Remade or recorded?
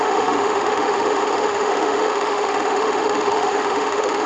remade